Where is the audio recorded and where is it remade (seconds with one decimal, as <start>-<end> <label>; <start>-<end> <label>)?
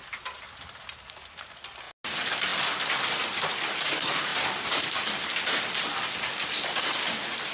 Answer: 0.0-4.3 recorded; 4.3-5.6 remade; 5.6-7.5 recorded